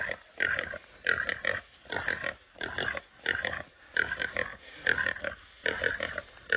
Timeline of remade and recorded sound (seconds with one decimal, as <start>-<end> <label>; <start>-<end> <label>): 0.0-6.6 recorded